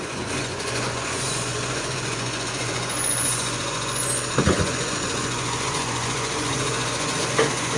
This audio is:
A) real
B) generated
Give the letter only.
B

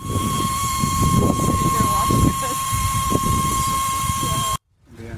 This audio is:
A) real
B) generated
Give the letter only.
B